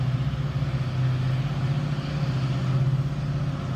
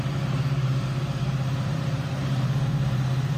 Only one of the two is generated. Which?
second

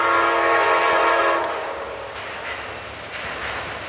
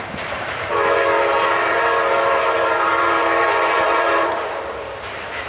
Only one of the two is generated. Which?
second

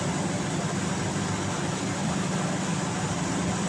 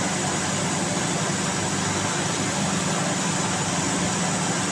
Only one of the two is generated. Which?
first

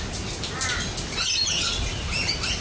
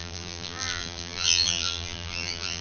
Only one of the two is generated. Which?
second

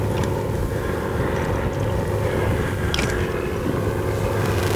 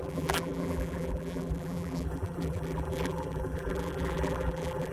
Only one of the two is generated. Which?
second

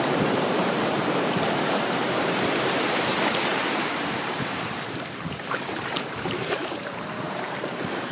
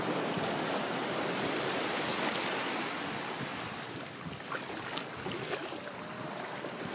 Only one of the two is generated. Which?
first